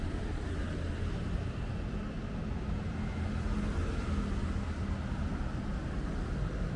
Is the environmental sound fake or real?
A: real